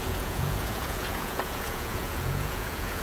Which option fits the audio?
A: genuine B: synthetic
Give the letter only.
B